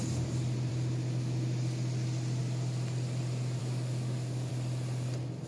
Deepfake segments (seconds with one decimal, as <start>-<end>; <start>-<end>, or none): 3.6-4.5